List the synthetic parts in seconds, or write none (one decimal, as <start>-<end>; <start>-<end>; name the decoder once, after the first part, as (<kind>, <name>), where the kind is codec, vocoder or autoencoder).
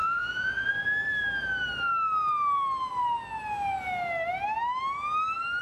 0.0-0.7 (vocoder, Vocos)